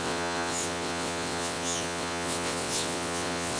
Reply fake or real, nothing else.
fake